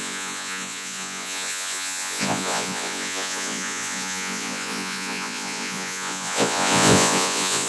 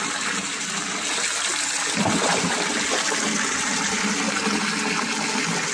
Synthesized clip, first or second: first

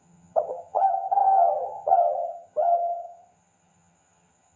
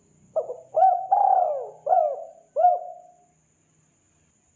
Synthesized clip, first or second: first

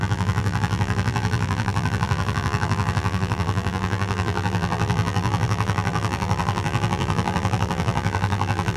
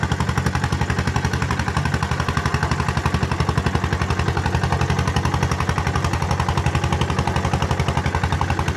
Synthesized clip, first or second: first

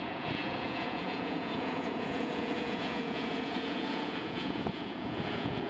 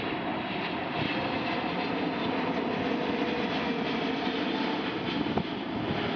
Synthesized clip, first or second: first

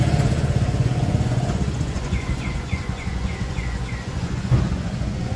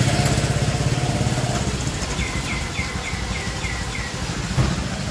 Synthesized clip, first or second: first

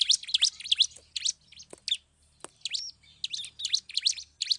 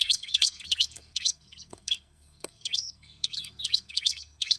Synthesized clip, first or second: second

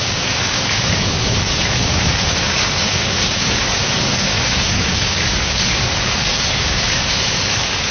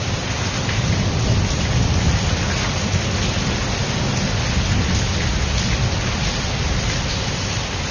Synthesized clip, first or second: first